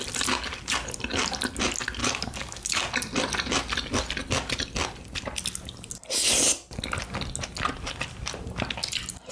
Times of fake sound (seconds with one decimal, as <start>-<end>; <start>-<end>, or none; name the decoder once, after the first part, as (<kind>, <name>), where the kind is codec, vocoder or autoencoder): 2.0-2.9 (codec, DAC)